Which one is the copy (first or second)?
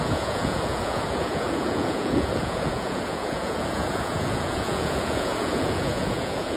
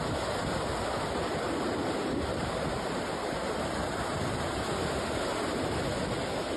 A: first